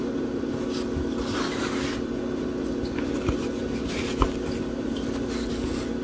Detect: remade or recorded recorded